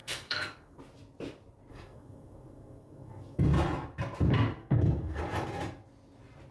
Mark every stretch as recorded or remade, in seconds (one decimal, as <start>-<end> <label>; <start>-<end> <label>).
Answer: 0.0-0.8 remade; 0.8-1.7 recorded; 1.7-3.4 remade; 3.4-4.6 recorded; 4.6-5.2 remade; 5.2-6.5 recorded